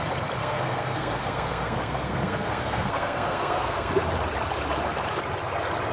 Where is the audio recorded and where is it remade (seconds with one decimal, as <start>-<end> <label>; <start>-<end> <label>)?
0.0-0.4 recorded; 0.4-3.9 remade; 3.9-5.9 recorded